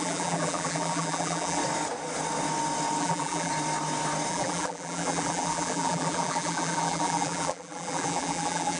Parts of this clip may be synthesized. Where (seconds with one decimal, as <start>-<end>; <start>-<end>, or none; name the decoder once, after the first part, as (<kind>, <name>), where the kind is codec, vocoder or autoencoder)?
0.0-1.6 (vocoder, BigVGAN v2); 3.0-3.5; 4.3-8.8